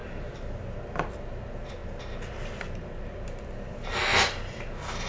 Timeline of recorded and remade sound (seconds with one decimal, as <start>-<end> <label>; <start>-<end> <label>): 0.0-5.1 recorded